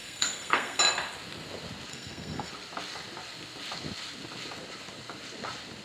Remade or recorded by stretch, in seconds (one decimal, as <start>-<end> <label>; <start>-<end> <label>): 0.0-0.8 remade; 0.8-1.9 recorded; 1.9-2.5 remade; 2.5-5.8 recorded